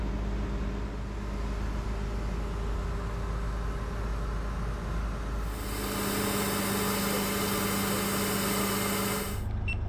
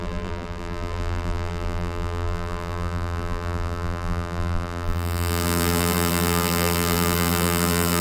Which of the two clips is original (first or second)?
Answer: first